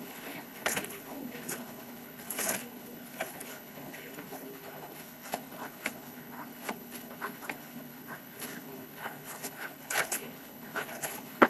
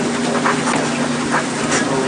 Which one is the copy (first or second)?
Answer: first